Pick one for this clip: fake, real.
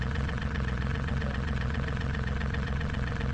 fake